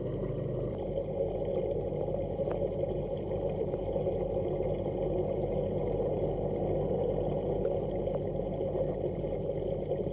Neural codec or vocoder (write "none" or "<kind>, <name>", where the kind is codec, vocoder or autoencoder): none